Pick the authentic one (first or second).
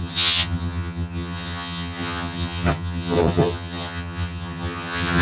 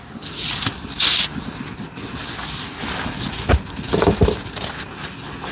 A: second